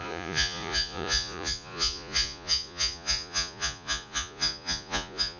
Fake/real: fake